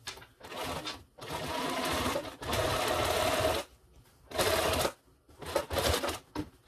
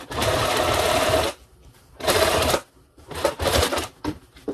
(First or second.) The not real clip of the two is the second